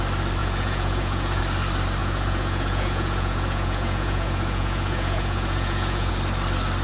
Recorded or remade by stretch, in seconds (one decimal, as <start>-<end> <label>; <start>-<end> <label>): 0.0-0.4 recorded; 0.4-1.4 remade; 1.4-2.0 recorded; 2.0-6.1 remade; 6.1-6.8 recorded